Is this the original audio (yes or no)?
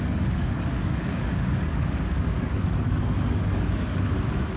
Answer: no